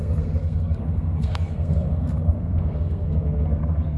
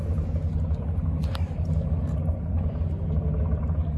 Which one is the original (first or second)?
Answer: second